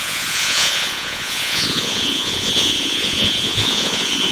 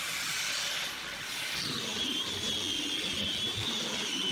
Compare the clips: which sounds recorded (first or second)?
second